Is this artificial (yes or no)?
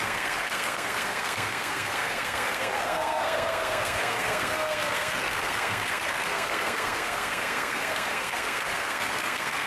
yes